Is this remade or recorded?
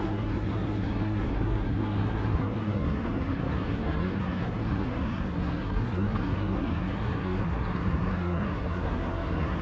remade